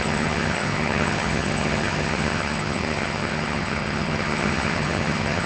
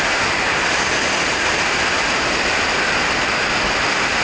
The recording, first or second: second